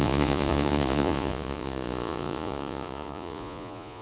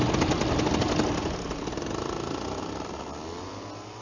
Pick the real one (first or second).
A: second